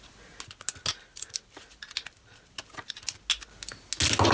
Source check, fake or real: real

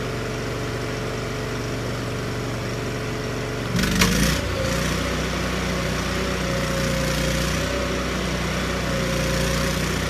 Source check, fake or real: real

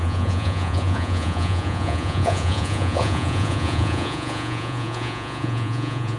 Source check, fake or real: fake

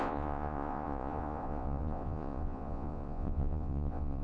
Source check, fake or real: fake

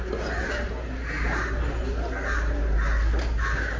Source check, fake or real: real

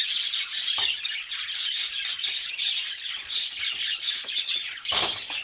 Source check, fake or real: real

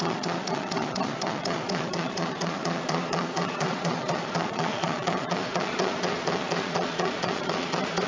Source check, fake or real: fake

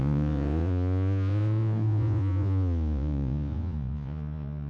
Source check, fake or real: fake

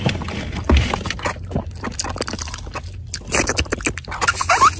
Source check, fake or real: real